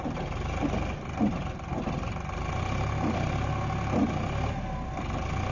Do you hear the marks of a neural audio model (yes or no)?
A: no